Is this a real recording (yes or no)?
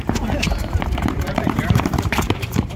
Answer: no